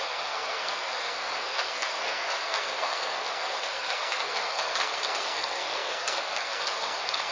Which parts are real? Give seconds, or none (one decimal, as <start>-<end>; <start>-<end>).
none